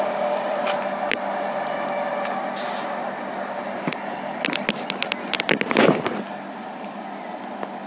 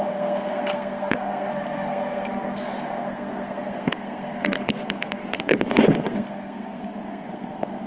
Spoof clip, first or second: second